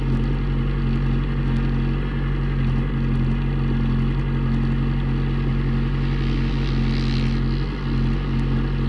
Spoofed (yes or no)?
no